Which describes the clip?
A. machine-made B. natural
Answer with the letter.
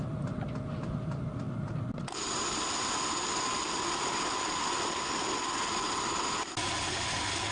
B